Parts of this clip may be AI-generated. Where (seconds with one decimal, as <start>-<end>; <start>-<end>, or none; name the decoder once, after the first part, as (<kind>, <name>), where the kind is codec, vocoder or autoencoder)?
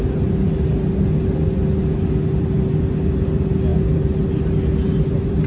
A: none